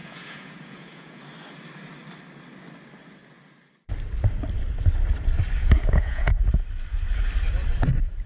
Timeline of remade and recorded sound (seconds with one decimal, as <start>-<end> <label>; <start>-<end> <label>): 0.0-1.2 remade; 1.2-5.6 recorded; 5.6-6.4 remade; 6.4-8.3 recorded